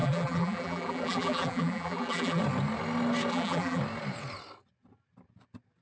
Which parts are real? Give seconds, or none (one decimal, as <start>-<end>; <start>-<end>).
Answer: 2.4-3.3; 3.8-5.8